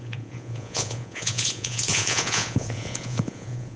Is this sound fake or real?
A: fake